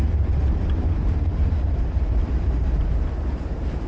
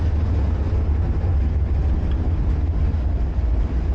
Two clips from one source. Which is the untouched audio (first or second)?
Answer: second